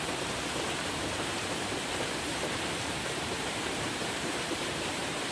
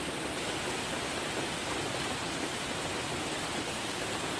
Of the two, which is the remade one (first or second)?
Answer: first